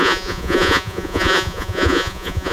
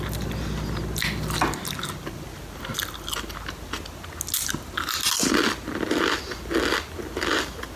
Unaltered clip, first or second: second